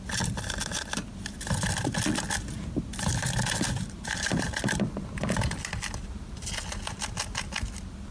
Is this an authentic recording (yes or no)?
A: no